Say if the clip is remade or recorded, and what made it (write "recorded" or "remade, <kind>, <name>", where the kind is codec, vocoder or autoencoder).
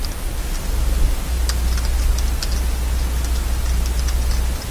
recorded